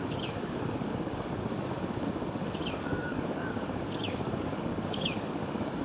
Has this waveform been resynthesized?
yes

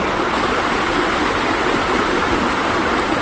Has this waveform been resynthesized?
no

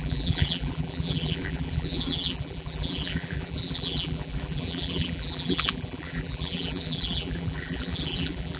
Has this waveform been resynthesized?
yes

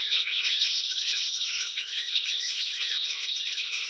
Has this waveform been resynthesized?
yes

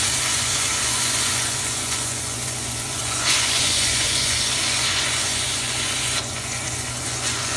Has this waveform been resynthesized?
yes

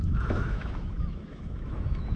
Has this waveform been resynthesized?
yes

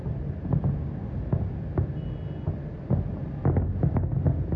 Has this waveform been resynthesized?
no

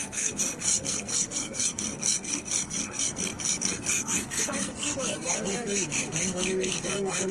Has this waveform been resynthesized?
yes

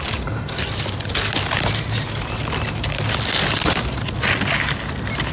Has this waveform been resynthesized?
no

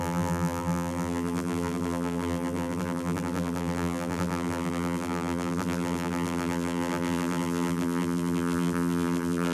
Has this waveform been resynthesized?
yes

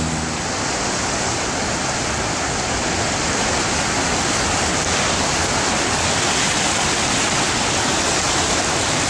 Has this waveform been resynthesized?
no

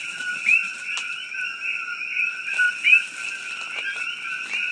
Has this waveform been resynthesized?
no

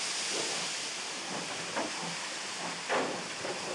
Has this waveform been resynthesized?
no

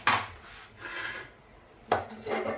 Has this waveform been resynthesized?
no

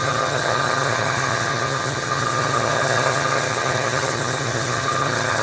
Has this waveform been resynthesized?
yes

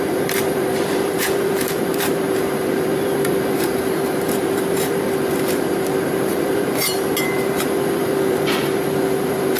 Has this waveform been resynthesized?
yes